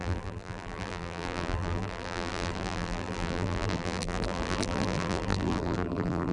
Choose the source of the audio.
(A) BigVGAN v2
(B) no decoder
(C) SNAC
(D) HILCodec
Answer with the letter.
A